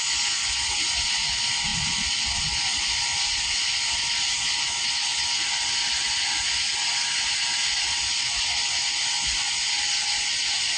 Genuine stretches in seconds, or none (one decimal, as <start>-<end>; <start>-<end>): 0.0-10.8